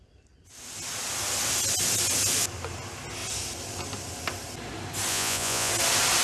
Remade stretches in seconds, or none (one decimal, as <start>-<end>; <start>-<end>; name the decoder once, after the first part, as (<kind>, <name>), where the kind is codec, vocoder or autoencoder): 5.1-5.7 (vocoder, Vocos)